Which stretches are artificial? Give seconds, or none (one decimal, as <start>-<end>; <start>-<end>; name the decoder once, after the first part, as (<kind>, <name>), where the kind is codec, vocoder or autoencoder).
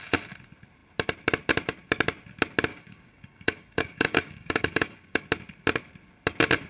2.7-5.2 (codec, DAC)